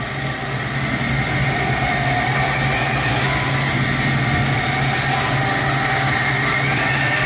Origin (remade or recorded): recorded